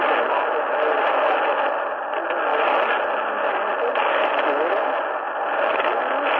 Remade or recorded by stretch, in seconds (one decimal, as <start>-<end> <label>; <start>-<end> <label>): 0.0-6.4 recorded